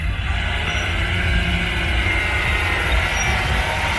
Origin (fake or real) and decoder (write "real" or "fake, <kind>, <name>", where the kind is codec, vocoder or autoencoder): real